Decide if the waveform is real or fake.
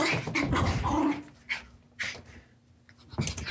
real